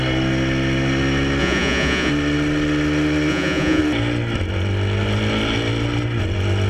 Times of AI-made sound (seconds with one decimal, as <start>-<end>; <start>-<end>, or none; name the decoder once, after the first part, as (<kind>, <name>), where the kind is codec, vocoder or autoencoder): 1.4-2.1 (vocoder, Vocos); 3.3-3.8